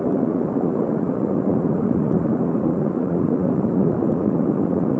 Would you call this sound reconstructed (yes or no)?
yes